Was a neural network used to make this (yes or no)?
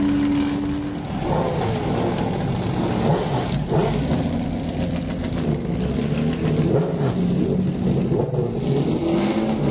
no